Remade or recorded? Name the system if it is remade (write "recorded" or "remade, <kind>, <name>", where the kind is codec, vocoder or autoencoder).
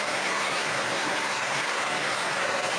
remade, codec, SNAC